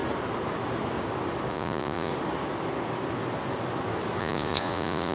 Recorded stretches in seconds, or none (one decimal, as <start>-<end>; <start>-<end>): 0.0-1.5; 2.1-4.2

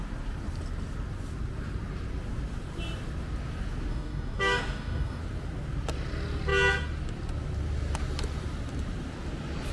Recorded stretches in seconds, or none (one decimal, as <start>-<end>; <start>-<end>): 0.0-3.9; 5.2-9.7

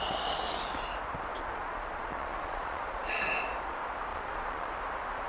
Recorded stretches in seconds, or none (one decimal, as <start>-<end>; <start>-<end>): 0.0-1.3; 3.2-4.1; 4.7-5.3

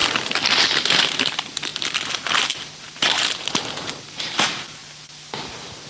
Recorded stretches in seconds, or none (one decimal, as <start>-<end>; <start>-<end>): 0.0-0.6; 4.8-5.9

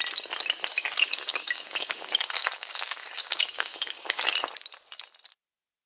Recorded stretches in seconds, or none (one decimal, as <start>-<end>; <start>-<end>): 0.0-0.7; 4.2-5.9

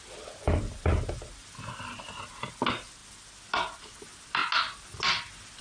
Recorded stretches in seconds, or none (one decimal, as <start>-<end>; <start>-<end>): 0.0-5.6

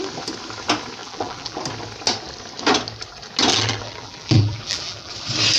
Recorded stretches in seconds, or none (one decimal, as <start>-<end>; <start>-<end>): 0.0-1.0; 1.6-3.5; 5.1-5.6

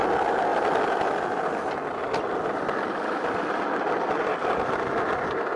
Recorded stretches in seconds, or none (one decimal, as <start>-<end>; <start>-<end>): 0.0-5.6